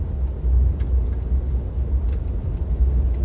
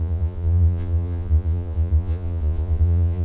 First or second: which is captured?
first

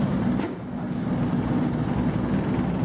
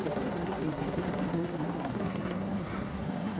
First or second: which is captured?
first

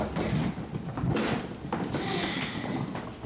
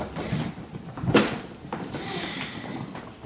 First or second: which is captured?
first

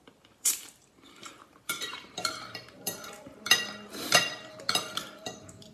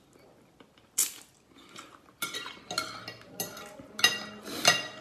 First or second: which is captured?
second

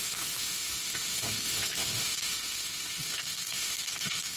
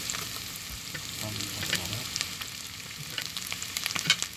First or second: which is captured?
second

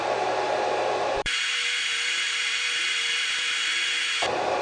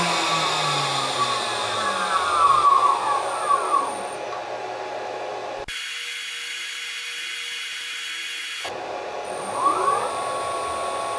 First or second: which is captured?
second